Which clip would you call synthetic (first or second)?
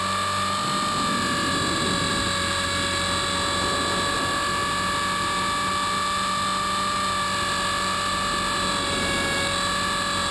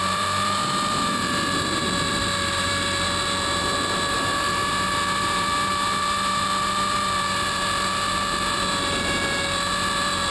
second